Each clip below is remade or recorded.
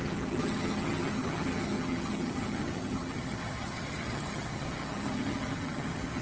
remade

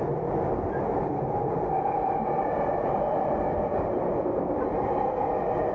recorded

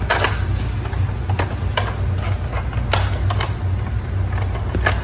recorded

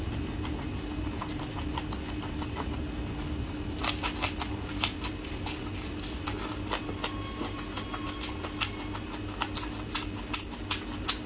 recorded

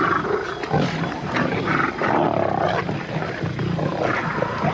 recorded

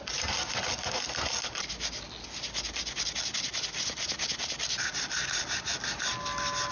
recorded